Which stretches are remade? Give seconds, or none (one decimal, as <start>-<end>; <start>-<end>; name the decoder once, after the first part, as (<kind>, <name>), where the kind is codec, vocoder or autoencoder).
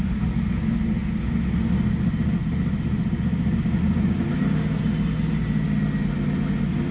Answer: none